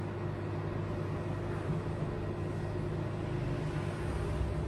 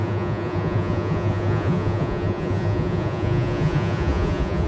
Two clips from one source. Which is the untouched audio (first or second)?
first